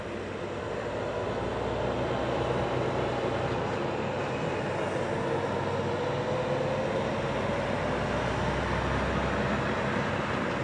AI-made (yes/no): no